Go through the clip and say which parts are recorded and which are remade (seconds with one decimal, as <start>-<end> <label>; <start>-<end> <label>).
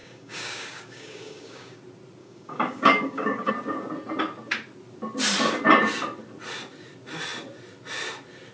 0.0-1.8 remade; 1.8-2.2 recorded; 2.2-3.5 remade; 3.5-8.5 recorded